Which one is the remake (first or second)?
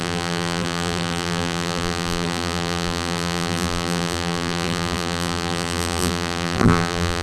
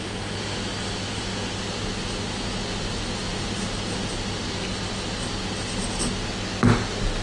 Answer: first